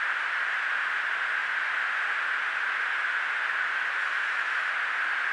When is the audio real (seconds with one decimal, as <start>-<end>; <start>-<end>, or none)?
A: 0.0-4.0; 4.7-5.3